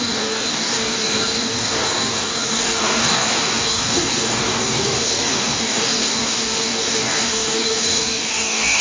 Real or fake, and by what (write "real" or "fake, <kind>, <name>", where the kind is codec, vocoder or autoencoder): fake, codec, DAC